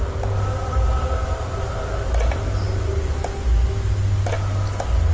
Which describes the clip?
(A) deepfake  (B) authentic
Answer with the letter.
B